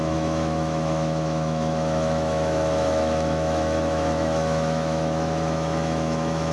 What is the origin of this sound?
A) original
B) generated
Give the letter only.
B